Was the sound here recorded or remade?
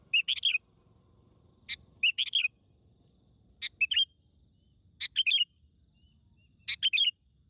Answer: recorded